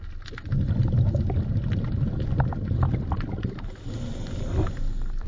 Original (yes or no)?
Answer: yes